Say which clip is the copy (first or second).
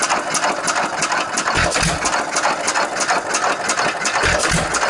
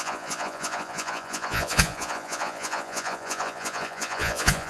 second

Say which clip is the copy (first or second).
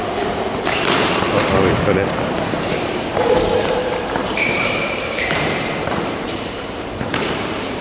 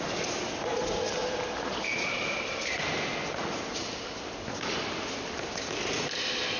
first